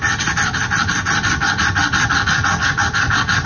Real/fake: real